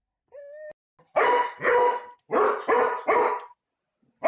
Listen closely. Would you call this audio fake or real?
real